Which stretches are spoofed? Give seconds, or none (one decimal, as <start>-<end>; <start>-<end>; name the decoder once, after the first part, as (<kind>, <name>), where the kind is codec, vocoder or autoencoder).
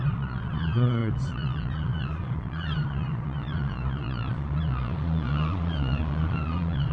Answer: 0.0-6.9 (vocoder, Vocos)